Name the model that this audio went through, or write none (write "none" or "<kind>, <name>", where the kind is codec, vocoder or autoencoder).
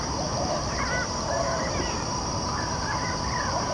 vocoder, BigVGAN v2